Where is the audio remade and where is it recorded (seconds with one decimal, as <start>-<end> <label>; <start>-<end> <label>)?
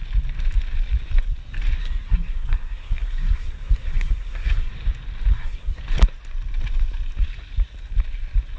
0.0-1.8 recorded; 1.8-4.7 remade; 4.7-5.3 recorded; 5.3-5.8 remade; 5.8-8.6 recorded